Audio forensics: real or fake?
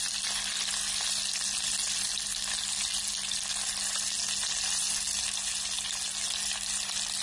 real